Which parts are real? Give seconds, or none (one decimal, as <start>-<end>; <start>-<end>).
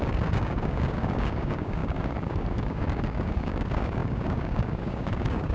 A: none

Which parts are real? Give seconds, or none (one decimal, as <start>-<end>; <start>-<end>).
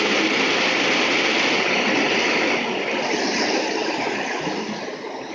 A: 0.0-5.3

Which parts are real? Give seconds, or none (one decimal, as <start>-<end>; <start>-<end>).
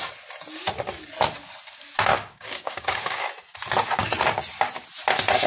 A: 0.0-2.1; 3.3-5.5